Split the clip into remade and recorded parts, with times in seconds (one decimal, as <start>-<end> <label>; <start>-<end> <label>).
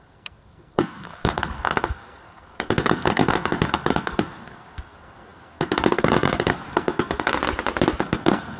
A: 0.0-7.3 remade; 7.3-8.0 recorded; 8.0-8.6 remade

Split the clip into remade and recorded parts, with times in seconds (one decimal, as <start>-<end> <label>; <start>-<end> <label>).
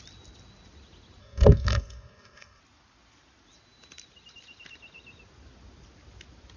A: 0.0-1.2 recorded; 1.2-2.6 remade; 2.6-6.6 recorded